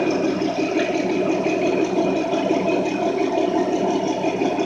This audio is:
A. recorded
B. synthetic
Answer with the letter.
A